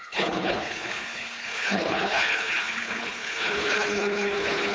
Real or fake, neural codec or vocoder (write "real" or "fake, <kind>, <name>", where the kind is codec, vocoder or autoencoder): fake, codec, HILCodec